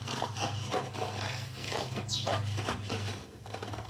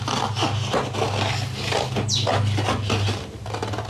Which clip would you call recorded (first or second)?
second